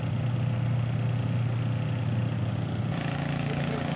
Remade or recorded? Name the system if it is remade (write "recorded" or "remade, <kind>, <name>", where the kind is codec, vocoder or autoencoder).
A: recorded